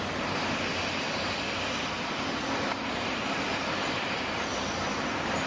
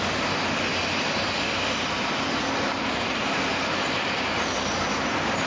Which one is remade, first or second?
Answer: first